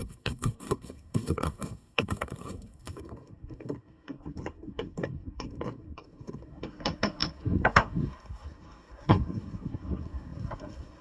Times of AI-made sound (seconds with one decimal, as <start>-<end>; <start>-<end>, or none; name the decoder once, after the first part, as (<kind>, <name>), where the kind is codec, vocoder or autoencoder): 0.0-11.0 (codec, SNAC)